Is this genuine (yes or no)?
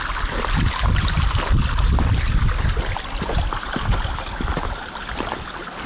yes